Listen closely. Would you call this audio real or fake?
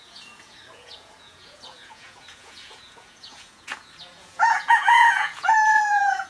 fake